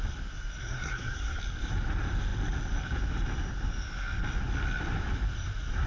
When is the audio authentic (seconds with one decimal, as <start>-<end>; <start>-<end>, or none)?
0.0-0.6; 1.4-5.9